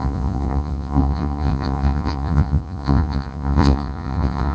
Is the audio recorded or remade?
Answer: remade